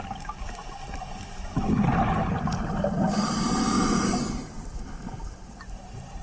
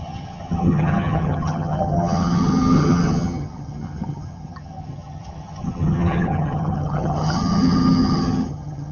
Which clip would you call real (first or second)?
first